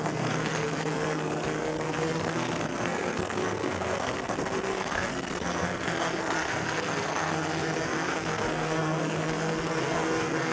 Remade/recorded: remade